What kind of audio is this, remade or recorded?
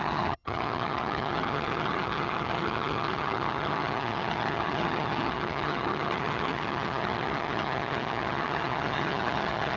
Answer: remade